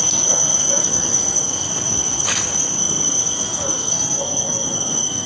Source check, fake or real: fake